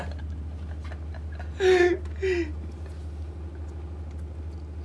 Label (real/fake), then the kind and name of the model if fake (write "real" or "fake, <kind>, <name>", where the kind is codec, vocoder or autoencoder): real